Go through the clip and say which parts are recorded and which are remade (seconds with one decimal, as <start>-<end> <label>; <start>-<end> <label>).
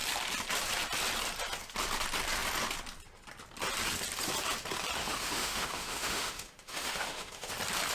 0.0-5.0 recorded; 5.0-7.5 remade; 7.5-7.9 recorded